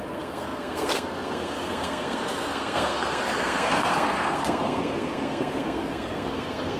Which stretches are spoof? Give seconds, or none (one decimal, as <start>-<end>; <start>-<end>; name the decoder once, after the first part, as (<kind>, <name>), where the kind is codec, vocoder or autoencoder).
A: 0.0-6.8 (codec, SNAC)